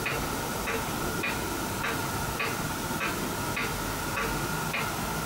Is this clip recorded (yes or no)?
yes